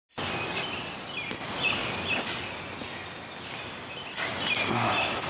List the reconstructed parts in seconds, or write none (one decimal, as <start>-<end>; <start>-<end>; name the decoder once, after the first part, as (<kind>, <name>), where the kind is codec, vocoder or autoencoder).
none